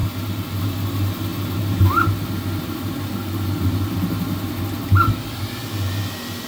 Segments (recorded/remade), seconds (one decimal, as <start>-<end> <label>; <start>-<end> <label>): 0.0-6.5 recorded